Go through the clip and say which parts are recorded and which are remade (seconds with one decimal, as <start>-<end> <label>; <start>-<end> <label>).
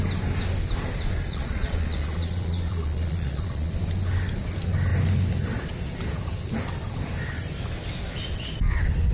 0.0-1.3 recorded; 1.3-3.7 remade; 3.7-9.1 recorded